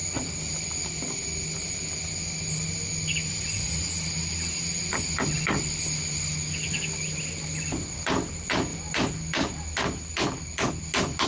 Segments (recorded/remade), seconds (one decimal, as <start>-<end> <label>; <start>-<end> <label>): 0.0-11.3 recorded